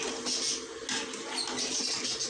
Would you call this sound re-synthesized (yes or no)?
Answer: no